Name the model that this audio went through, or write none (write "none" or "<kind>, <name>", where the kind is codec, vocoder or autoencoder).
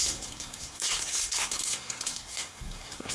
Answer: codec, SNAC